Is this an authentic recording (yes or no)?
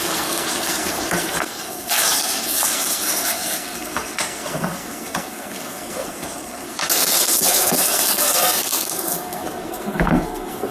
no